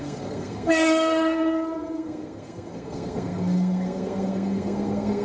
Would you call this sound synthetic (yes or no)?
yes